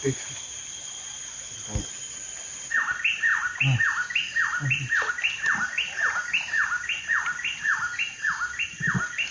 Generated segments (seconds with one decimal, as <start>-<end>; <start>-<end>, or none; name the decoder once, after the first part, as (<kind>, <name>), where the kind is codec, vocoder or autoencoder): none

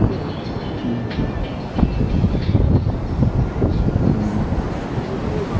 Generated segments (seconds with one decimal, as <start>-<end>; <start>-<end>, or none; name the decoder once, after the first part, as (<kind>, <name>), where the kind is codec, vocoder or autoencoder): none

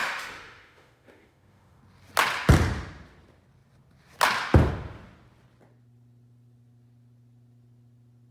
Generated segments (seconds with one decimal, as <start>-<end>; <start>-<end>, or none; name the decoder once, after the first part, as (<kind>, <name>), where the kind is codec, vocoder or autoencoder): 0.0-1.8 (autoencoder, DAC-VAE)

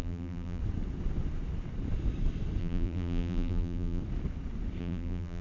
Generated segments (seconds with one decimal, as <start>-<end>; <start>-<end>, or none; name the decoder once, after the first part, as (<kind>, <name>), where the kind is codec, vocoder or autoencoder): 0.0-0.6 (vocoder, BigVGAN v2); 2.6-4.0; 4.8-5.4

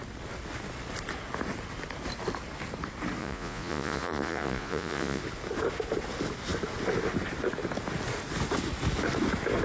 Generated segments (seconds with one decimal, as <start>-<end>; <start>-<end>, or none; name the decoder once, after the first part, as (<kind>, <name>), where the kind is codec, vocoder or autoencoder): 3.2-5.2 (vocoder, Vocos)